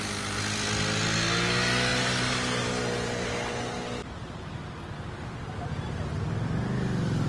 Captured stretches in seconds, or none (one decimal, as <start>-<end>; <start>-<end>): 0.0-7.3

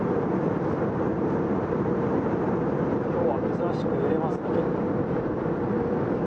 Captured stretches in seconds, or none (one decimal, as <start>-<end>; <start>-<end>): 0.0-1.1; 3.2-6.3

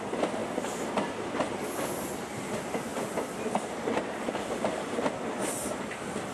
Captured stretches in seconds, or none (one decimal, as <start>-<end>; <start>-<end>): 0.0-6.3

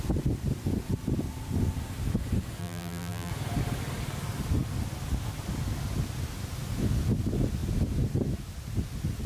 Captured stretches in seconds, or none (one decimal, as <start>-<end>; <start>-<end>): 0.0-2.6; 3.3-9.3

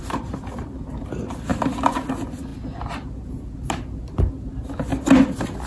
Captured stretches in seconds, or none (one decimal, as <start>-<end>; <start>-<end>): 0.0-5.7

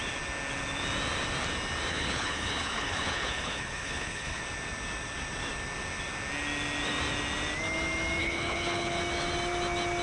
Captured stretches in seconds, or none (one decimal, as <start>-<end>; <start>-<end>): 0.0-1.9; 4.4-8.2; 9.0-10.0

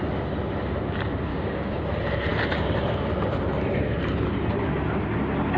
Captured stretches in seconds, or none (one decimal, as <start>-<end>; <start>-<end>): 0.0-1.3; 1.8-5.6